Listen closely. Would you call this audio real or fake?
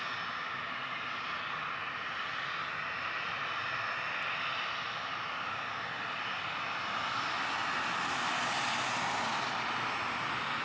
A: real